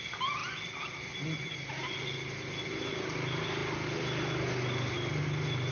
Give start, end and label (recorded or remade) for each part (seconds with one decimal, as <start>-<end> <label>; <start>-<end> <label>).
0.0-5.7 recorded